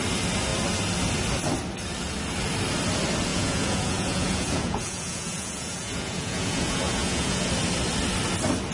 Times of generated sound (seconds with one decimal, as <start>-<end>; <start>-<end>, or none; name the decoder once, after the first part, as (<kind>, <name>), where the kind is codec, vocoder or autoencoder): 3.3-7.5 (vocoder, Vocos)